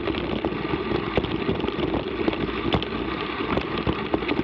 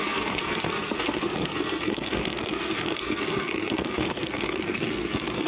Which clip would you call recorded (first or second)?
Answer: first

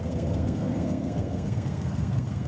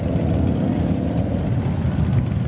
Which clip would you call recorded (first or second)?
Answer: second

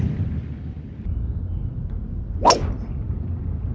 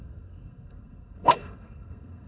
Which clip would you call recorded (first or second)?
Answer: first